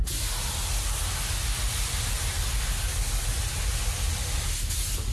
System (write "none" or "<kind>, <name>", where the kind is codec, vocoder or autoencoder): none